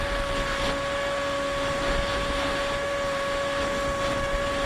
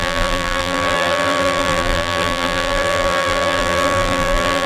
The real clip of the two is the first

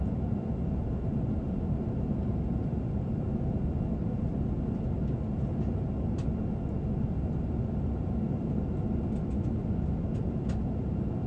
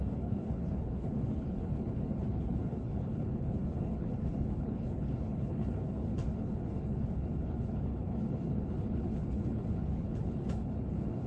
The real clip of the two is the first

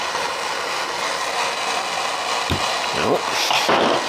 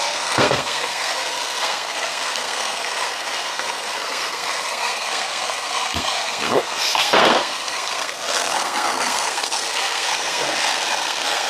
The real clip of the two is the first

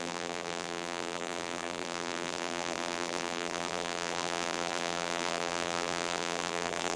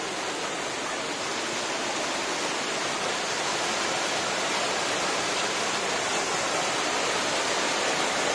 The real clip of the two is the second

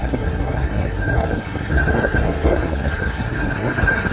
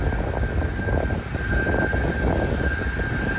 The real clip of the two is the second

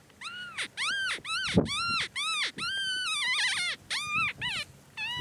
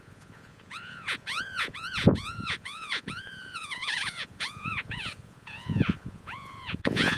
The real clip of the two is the first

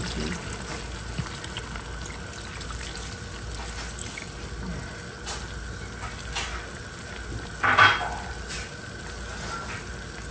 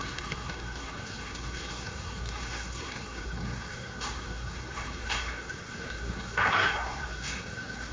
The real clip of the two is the first